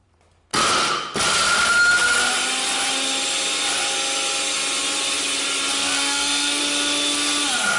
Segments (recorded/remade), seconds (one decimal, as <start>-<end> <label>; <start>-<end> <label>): 0.0-5.8 recorded; 5.8-6.6 remade; 6.6-7.8 recorded